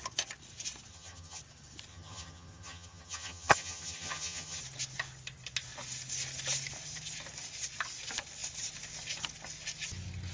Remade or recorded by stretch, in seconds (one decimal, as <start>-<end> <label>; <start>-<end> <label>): 0.0-0.9 recorded; 0.9-1.4 remade; 1.4-1.9 recorded; 1.9-4.6 remade; 4.6-10.3 recorded